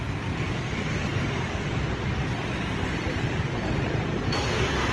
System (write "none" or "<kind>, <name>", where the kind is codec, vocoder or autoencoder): none